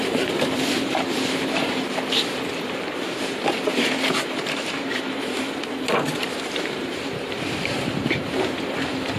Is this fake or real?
fake